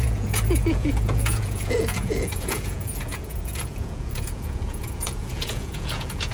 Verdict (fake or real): fake